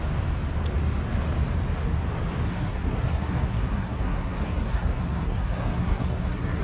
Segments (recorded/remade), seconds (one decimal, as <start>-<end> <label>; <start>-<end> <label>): 0.0-2.5 recorded; 2.5-6.6 remade